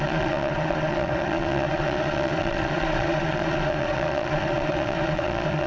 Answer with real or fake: fake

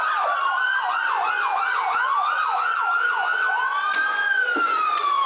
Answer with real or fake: fake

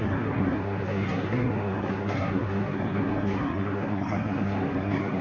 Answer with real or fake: fake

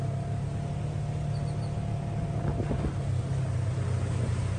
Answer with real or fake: real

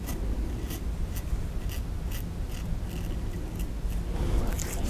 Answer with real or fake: real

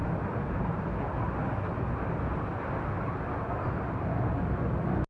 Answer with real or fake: real